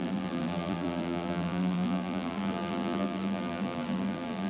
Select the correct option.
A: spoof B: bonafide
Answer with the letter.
A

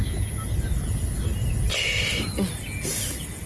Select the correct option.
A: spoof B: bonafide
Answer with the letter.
B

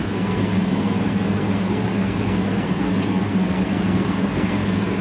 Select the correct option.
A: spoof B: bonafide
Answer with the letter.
A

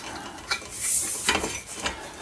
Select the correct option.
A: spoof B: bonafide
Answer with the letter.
B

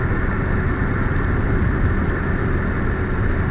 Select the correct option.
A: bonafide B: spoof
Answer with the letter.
A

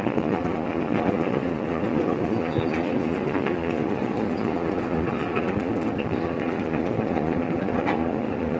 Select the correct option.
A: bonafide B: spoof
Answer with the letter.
B